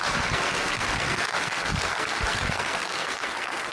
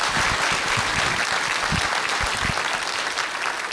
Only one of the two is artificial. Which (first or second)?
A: first